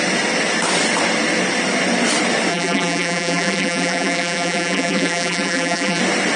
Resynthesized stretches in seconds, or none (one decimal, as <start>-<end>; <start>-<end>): 2.5-6.0